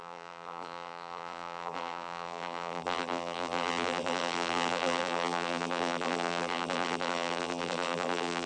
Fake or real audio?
fake